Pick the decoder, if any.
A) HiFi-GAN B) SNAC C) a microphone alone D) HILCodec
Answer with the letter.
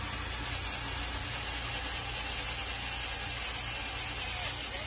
C